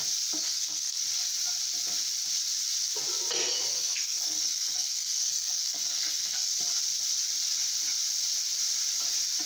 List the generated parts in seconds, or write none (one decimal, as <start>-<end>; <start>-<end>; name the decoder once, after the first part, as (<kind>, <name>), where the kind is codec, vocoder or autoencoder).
0.4-1.0 (codec, SNAC); 3.7-6.5